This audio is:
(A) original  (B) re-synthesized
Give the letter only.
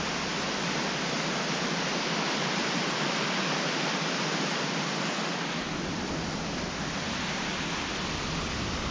A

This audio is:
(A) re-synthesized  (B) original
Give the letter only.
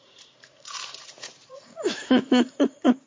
A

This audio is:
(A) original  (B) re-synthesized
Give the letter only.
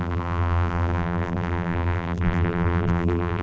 B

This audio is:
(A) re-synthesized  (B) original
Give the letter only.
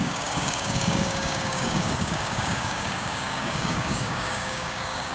A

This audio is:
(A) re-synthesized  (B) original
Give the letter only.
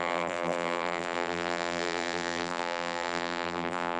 A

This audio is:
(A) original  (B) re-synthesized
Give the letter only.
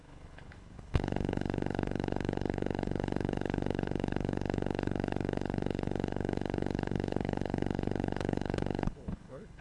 B